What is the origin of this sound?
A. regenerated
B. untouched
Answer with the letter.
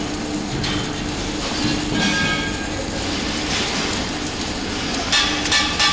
B